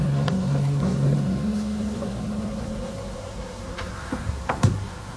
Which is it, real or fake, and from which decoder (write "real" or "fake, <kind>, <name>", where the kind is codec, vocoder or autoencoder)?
fake, codec, SNAC